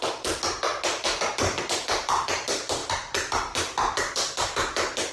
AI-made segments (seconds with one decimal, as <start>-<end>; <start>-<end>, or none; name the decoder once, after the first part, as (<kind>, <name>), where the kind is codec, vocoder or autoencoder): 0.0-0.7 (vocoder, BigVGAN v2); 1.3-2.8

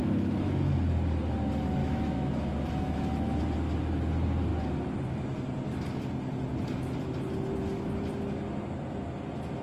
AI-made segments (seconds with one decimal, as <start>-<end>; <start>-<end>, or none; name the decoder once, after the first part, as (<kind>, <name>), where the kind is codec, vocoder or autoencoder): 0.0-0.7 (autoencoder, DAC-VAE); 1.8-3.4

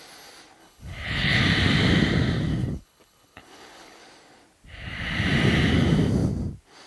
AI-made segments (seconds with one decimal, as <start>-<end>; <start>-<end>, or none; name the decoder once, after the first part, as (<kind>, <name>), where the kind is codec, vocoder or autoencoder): 0.6-1.4 (codec, HILCodec); 2.6-4.0